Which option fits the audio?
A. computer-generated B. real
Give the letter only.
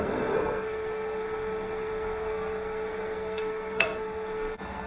A